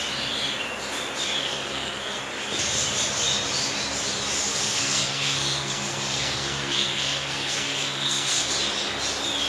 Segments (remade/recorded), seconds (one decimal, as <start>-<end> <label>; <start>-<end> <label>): 0.0-1.4 recorded; 1.4-2.2 remade; 2.2-4.5 recorded; 4.5-8.5 remade; 8.5-9.5 recorded